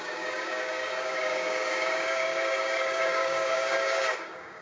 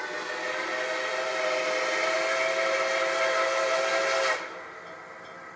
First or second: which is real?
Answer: second